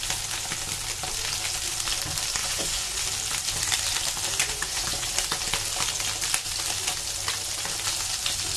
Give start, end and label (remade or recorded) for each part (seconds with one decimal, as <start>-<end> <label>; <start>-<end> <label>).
0.0-2.4 recorded; 2.4-3.0 remade; 3.0-4.4 recorded; 4.4-5.1 remade; 5.1-8.6 recorded